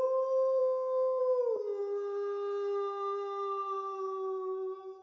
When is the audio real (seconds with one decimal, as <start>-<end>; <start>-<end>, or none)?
0.0-0.6; 1.2-5.0